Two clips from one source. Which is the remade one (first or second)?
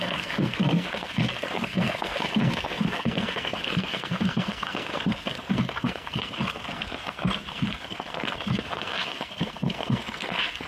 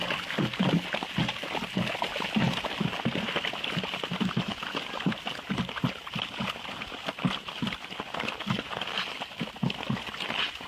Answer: first